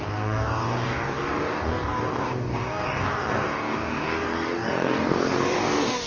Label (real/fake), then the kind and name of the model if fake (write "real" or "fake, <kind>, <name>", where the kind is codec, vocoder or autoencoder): fake, codec, DAC